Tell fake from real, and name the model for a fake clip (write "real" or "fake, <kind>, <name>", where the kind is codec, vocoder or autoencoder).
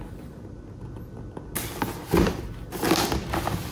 real